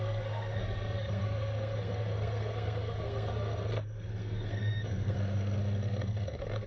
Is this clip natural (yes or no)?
no